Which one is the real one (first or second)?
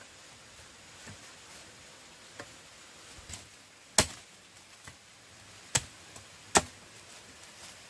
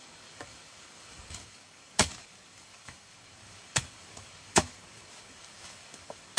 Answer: first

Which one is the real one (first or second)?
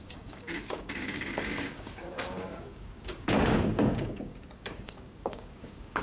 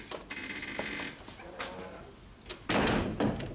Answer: second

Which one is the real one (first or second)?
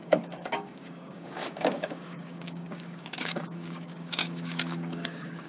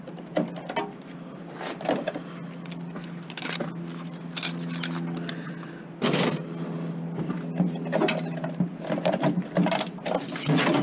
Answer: second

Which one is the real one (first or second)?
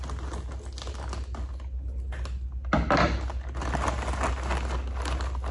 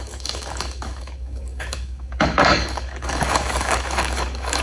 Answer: first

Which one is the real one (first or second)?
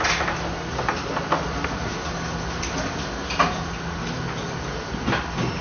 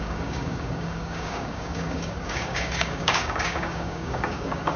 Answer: first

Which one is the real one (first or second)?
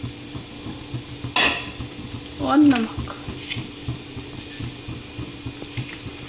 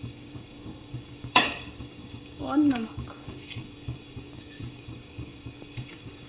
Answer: first